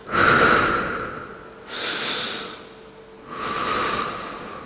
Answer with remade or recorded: recorded